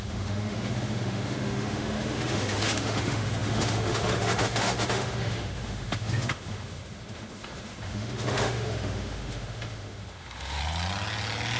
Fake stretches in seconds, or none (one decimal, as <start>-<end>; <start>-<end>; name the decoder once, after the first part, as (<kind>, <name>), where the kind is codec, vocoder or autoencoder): 0.0-10.6 (autoencoder, DAC-VAE)